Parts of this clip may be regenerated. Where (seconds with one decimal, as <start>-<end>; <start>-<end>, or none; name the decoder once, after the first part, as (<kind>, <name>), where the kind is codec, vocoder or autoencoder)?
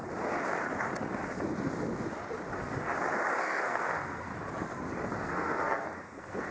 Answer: 3.4-4.3 (codec, SNAC); 5.2-6.5